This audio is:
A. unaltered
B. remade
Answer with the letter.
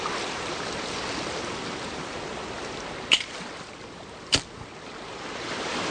A